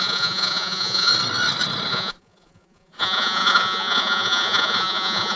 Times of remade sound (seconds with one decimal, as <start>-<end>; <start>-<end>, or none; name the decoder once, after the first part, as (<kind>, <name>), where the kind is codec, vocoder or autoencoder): 0.0-1.1 (vocoder, Vocos); 1.9-5.4